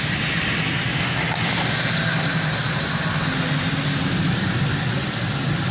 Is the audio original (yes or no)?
yes